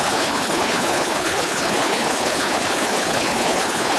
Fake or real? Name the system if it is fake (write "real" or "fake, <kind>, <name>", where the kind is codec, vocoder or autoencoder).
fake, codec, HILCodec